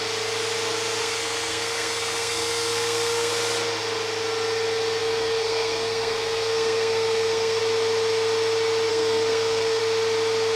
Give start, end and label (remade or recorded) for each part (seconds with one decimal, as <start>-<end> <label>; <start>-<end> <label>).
0.0-1.0 recorded; 1.0-3.3 remade; 3.3-5.0 recorded; 5.0-7.6 remade; 7.6-8.9 recorded; 8.9-9.8 remade; 9.8-10.6 recorded